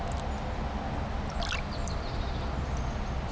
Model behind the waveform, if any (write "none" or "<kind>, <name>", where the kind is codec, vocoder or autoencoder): none